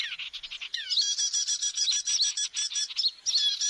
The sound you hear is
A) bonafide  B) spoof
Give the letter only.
A